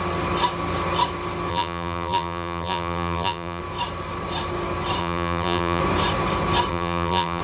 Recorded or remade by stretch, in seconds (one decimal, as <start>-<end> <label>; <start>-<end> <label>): 0.0-1.5 recorded; 1.5-3.6 remade; 3.6-5.0 recorded; 5.0-5.8 remade; 5.8-6.7 recorded; 6.7-7.4 remade